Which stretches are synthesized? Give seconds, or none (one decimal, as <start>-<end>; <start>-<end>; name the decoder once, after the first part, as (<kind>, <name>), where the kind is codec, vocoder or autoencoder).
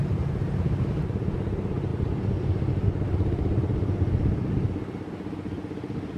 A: none